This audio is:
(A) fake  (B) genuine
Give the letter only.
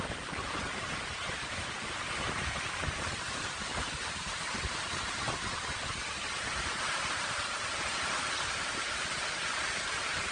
A